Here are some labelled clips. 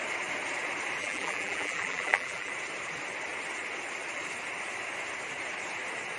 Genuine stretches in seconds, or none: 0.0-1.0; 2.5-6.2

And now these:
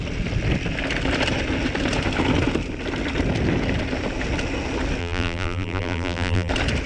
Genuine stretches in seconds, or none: 0.0-5.0; 6.5-6.9

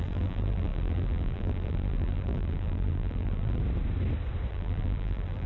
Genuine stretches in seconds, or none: 3.6-4.5

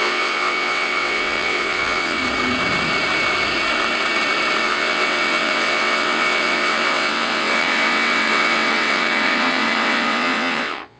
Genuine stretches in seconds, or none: 2.2-4.6

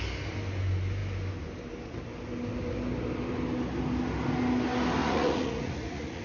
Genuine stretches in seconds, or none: 0.0-5.0

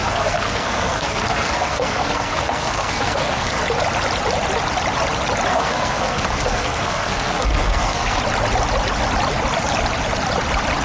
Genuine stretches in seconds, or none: 3.6-5.5; 8.2-10.8